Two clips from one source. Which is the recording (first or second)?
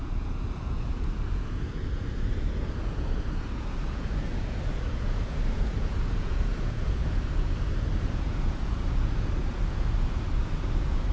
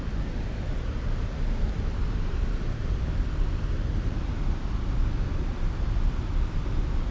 second